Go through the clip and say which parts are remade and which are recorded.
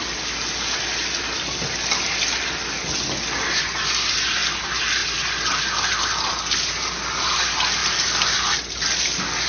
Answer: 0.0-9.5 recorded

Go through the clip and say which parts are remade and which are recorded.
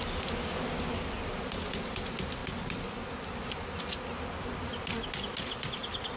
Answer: 0.0-6.2 recorded